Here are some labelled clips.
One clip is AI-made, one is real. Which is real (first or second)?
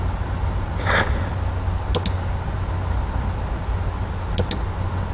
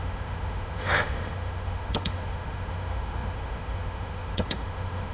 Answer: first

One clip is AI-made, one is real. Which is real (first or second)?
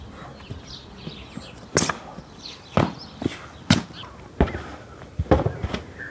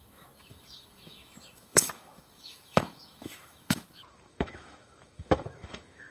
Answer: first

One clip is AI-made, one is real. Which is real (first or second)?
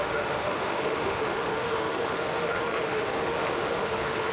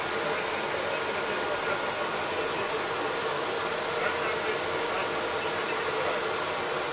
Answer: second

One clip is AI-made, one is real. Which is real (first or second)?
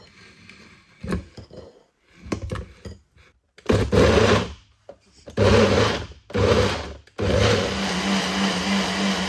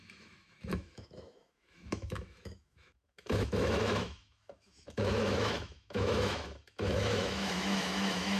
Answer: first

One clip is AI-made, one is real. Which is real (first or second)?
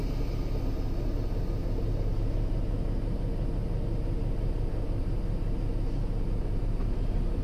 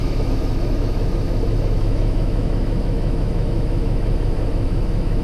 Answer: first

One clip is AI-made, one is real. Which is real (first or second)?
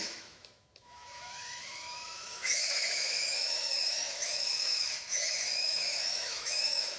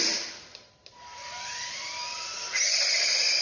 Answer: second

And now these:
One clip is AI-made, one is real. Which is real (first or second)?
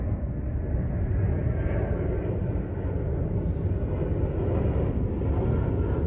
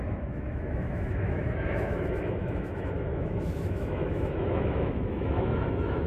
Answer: first